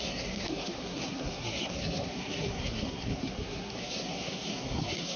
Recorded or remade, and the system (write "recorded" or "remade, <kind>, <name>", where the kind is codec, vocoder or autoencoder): remade, codec, SNAC